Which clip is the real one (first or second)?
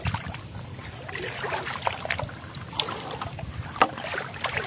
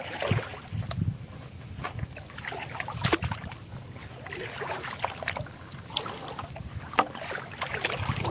second